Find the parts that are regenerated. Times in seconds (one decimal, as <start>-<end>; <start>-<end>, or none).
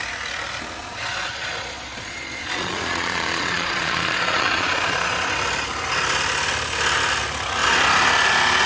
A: 0.8-5.3